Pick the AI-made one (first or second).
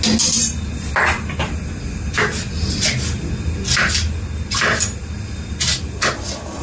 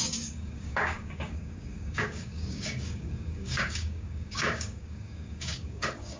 second